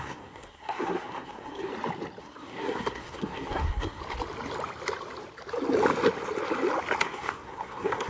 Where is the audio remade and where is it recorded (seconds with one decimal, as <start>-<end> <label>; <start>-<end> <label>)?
0.0-1.7 remade; 1.7-2.2 recorded; 2.2-4.0 remade; 4.0-7.0 recorded; 7.0-8.1 remade